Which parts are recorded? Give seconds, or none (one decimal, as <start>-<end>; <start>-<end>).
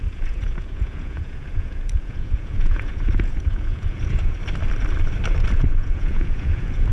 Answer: 4.4-5.5